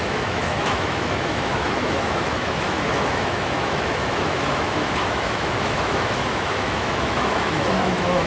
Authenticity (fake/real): fake